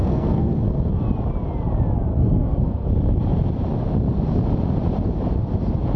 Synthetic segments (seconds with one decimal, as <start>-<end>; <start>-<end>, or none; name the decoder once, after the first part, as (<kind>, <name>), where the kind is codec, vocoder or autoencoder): 0.0-0.9 (codec, SNAC); 2.1-2.9